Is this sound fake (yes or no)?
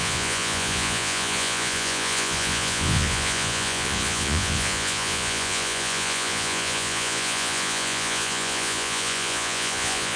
yes